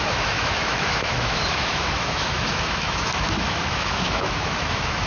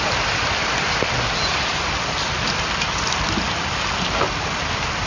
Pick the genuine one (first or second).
second